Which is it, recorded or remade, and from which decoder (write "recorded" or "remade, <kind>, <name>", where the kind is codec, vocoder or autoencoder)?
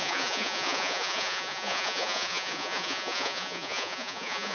remade, vocoder, Vocos